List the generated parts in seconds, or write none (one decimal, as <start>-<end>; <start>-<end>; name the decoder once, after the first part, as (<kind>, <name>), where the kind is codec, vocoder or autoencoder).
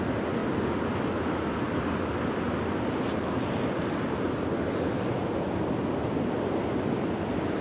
none